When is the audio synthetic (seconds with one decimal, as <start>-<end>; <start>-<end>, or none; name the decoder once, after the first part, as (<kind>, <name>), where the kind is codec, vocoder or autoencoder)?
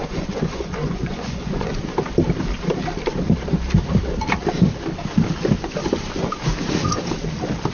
0.0-1.7 (vocoder, Vocos)